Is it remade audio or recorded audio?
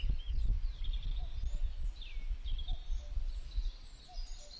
recorded